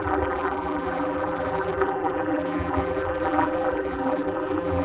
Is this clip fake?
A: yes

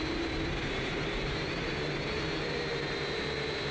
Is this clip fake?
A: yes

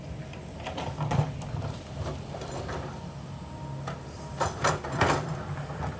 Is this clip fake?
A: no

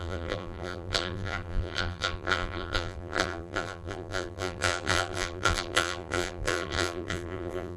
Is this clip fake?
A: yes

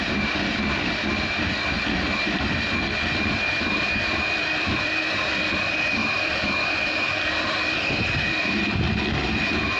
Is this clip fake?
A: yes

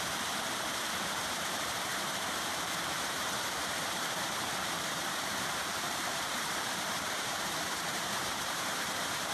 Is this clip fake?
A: yes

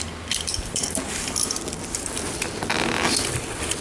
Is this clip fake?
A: yes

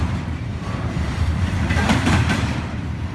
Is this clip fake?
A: yes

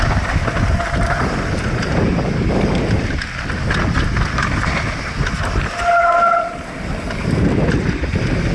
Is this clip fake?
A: no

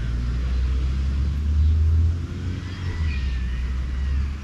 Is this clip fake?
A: no